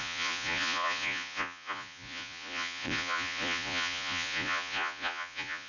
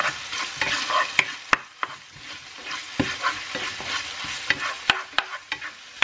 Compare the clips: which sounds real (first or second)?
second